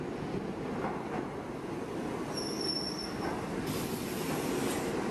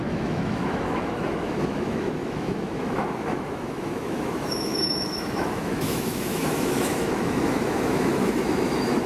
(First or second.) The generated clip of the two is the second